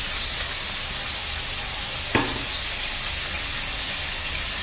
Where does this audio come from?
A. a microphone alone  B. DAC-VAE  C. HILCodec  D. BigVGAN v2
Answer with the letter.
A